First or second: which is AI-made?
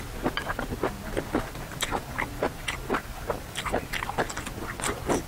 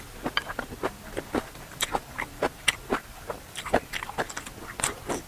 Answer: second